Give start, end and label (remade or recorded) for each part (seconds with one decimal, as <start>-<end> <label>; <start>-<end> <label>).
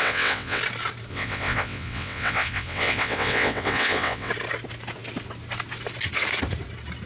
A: 0.0-0.6 remade; 0.6-1.1 recorded; 1.1-4.3 remade; 4.3-7.1 recorded